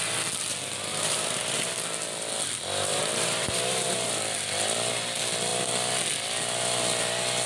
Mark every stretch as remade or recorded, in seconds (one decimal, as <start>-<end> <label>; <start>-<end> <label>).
0.0-0.9 recorded; 0.9-1.7 remade; 1.7-2.9 recorded; 2.9-4.1 remade; 4.1-7.5 recorded